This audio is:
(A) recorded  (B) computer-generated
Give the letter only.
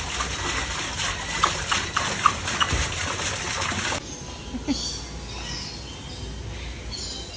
A